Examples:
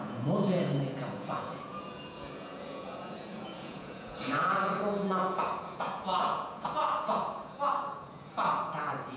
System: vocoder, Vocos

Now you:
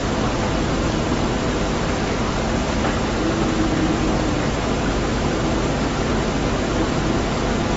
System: none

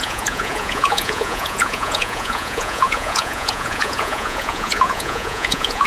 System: vocoder, Vocos